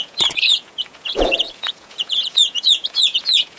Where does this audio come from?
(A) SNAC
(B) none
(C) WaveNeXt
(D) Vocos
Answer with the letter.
D